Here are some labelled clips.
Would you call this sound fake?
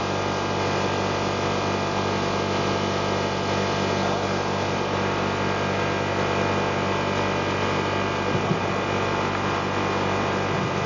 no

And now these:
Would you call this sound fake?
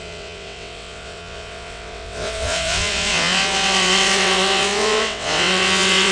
yes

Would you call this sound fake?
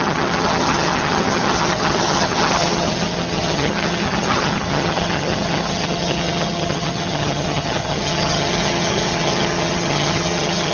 yes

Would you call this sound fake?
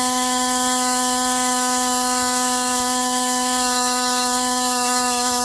yes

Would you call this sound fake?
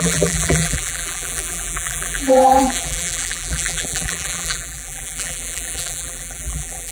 yes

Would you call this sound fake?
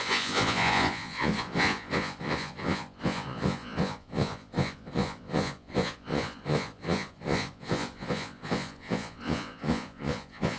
yes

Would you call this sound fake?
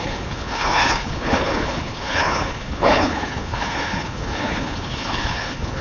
yes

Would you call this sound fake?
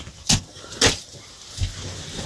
no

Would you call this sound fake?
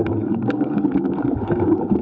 yes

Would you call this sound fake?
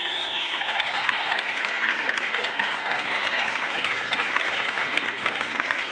yes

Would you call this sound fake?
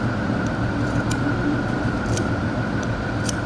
yes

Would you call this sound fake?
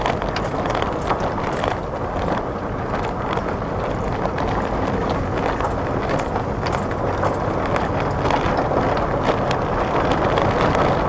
no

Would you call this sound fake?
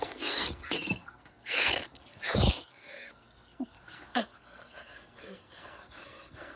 yes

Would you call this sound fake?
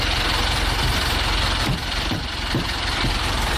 yes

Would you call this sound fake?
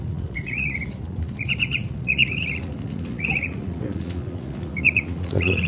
yes